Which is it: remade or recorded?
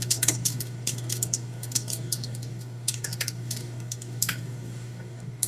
remade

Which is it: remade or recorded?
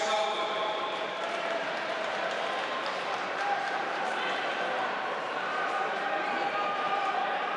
remade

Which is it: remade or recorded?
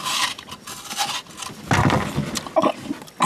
recorded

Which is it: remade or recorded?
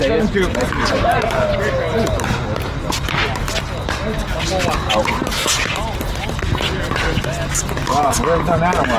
recorded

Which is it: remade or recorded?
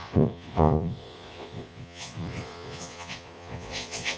remade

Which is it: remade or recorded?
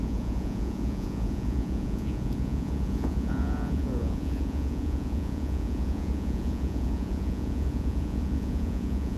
remade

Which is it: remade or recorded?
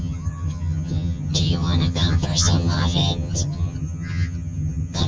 remade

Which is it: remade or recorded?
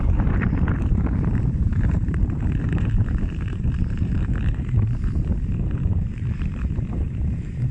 remade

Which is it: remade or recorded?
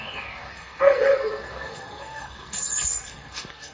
remade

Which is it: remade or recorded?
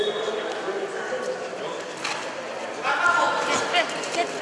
recorded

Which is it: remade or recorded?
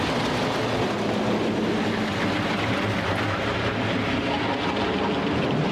recorded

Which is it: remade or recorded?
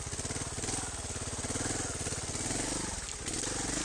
recorded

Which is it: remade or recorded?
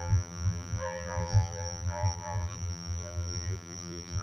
remade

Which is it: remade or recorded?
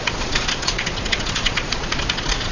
remade